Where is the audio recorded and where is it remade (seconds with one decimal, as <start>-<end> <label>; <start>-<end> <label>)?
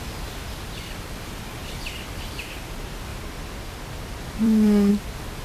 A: 0.0-1.6 recorded; 1.6-2.7 remade; 2.7-3.1 recorded; 3.1-4.9 remade; 4.9-5.4 recorded